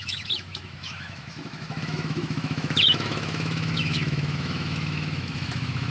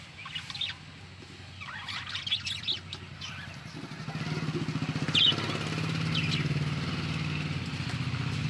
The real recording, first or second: second